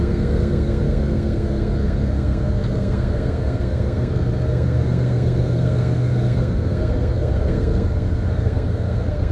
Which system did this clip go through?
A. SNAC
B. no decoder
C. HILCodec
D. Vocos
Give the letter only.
A